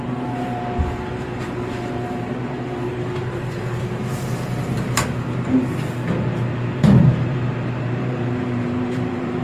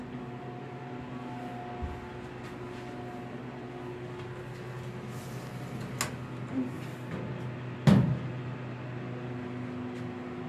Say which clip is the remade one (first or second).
first